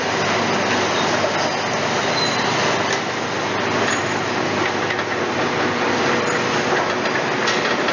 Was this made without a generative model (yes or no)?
yes